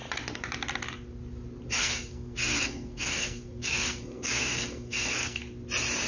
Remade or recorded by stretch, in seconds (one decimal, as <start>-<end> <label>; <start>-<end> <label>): 0.0-1.8 recorded; 1.8-5.4 remade; 5.4-6.1 recorded